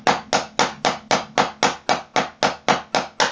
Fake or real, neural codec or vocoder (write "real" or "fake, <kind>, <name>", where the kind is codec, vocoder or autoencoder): real